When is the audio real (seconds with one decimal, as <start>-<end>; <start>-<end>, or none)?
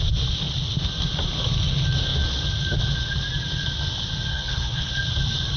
0.0-4.3; 4.9-5.6